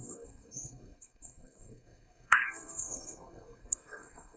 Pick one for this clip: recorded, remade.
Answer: remade